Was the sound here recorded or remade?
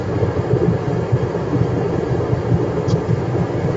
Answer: recorded